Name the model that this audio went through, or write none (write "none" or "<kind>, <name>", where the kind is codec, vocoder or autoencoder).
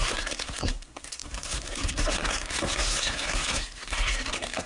codec, SNAC